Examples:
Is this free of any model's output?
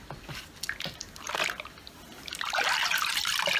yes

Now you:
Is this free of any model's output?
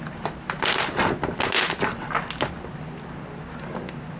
yes